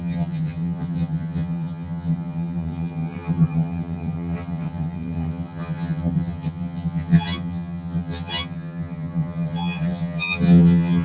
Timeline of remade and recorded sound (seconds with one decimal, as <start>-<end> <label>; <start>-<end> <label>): 0.0-11.0 remade